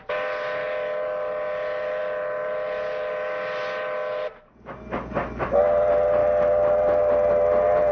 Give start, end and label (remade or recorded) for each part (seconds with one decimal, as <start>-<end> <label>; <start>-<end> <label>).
0.0-7.9 recorded